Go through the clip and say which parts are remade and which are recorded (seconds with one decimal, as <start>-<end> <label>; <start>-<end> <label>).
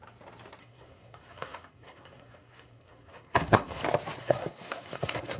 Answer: 0.0-0.6 recorded; 0.6-3.8 remade; 3.8-4.2 recorded; 4.2-5.4 remade